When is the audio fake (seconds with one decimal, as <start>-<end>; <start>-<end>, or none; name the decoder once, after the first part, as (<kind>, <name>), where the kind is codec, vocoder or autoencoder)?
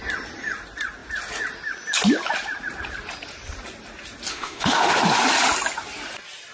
4.3-5.0 (autoencoder, DAC-VAE)